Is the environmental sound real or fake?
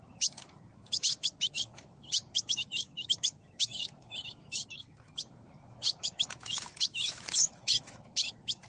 fake